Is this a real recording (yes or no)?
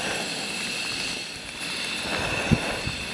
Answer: yes